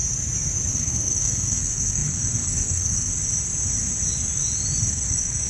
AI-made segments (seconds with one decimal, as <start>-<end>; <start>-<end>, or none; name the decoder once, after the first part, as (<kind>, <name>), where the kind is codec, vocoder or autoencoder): 0.7-3.1 (codec, SNAC); 4.9-5.5